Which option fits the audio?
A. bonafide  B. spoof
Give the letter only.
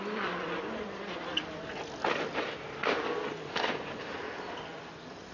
A